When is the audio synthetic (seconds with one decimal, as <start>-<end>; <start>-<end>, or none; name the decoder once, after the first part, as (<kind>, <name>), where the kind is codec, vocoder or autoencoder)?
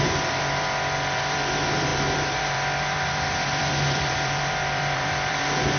0.0-5.8 (vocoder, BigVGAN v2)